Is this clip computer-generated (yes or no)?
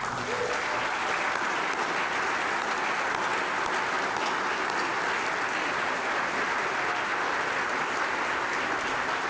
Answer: no